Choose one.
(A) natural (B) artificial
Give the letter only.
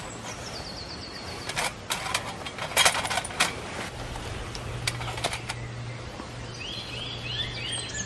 A